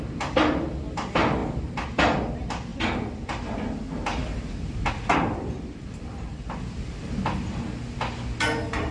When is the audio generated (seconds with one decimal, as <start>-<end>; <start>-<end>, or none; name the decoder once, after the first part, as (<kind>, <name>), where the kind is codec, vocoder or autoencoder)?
none